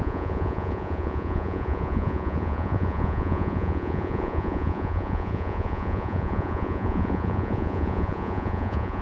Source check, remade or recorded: remade